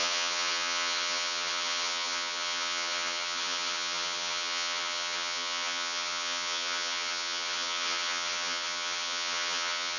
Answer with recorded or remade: remade